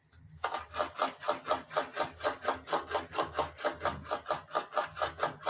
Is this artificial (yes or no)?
no